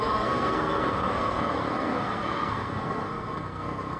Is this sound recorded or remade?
remade